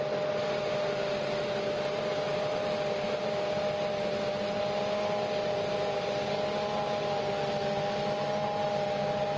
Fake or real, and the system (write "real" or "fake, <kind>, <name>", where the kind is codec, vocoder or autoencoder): real